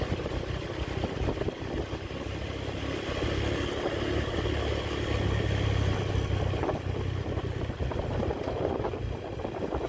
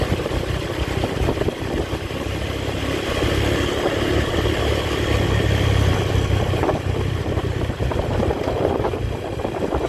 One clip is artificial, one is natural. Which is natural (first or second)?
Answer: first